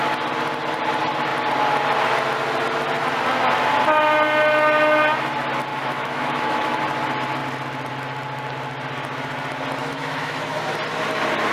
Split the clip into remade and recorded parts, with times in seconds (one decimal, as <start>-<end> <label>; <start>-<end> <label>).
0.0-5.7 recorded; 5.7-6.8 remade; 6.8-9.8 recorded; 9.8-10.6 remade; 10.6-11.5 recorded